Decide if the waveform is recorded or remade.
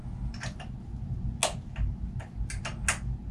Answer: recorded